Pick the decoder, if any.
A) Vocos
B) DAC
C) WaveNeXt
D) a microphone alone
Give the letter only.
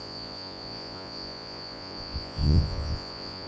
A